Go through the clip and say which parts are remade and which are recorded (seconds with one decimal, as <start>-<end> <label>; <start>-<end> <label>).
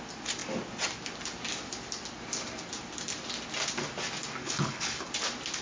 0.0-4.4 recorded; 4.4-5.1 remade; 5.1-5.6 recorded